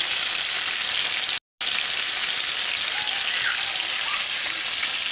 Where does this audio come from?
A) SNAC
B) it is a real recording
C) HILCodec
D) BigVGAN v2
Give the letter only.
B